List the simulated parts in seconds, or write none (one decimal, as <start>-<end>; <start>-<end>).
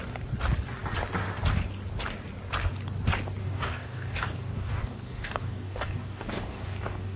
3.4-7.2